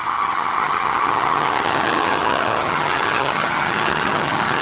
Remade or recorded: remade